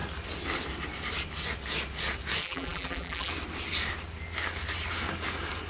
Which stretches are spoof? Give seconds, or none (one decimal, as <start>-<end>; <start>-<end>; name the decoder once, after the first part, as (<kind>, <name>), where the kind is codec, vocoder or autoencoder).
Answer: 2.4-3.3 (vocoder, BigVGAN v2)